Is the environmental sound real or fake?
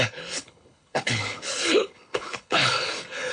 fake